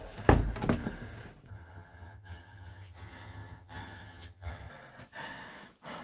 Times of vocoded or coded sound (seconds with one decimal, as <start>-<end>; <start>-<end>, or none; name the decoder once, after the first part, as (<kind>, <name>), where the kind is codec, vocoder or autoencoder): 1.5-4.7 (vocoder, HiFi-GAN)